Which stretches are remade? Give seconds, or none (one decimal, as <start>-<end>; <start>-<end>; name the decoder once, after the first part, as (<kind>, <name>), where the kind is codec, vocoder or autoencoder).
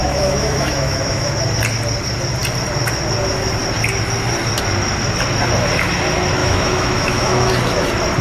0.0-1.3 (autoencoder, DAC-VAE); 6.4-7.5